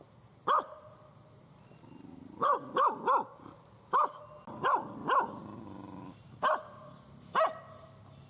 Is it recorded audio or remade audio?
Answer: recorded